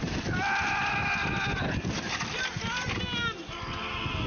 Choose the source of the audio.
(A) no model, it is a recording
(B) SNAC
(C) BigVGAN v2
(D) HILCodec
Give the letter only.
A